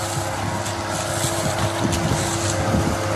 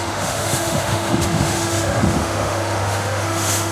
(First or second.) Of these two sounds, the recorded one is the first